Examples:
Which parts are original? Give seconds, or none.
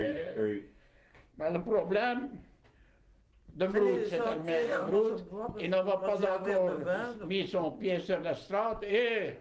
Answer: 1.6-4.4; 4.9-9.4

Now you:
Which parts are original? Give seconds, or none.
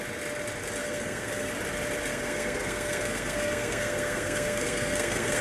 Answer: 0.0-0.8; 1.5-2.1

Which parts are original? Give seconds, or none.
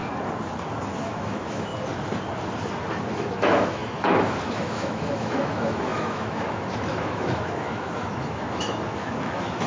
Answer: 0.0-1.0; 1.7-3.1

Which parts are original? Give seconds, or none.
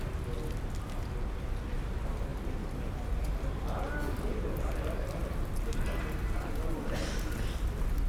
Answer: 0.0-8.1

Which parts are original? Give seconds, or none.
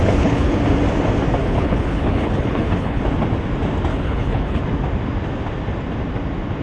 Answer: 0.6-1.4; 3.0-3.9; 4.6-6.6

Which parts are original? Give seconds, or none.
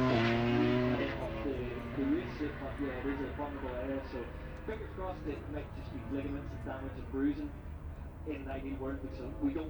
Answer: 0.0-8.1; 8.6-9.7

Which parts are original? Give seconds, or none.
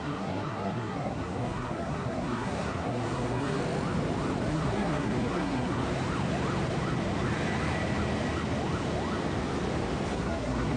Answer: 3.6-4.5; 5.8-10.1